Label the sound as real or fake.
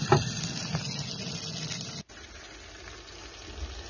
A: real